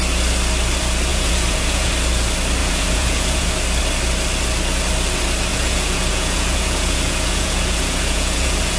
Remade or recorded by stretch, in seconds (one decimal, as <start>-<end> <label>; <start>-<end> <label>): 0.0-1.1 recorded; 1.1-1.9 remade; 1.9-2.6 recorded; 2.6-3.5 remade; 3.5-5.5 recorded; 5.5-8.8 remade